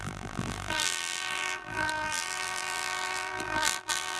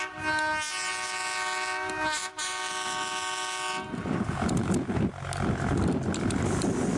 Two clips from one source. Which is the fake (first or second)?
first